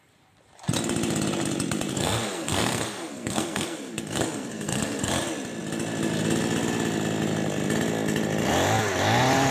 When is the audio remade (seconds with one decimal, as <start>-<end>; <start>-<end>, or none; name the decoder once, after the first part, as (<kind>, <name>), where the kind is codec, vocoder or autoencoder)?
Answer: 1.9-5.1 (codec, SNAC)